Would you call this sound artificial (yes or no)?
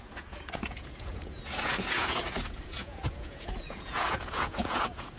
yes